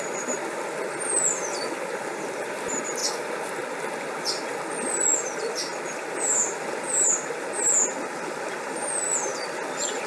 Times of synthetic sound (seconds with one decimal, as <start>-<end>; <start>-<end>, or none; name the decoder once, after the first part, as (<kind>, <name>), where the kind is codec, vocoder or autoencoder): none